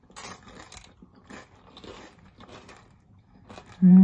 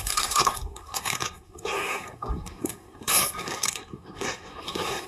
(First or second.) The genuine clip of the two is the first